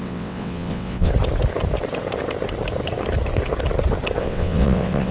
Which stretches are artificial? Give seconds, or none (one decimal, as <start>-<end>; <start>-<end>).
0.0-1.1; 4.2-5.1